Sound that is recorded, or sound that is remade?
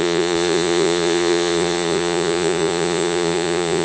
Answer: remade